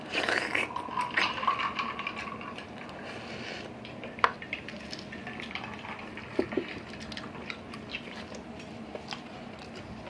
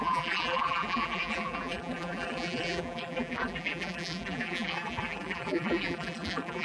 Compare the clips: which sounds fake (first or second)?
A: second